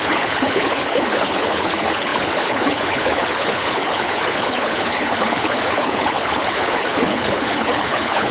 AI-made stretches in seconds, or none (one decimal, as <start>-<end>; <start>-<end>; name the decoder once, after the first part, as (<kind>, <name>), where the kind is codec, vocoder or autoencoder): 0.0-8.3 (codec, HILCodec)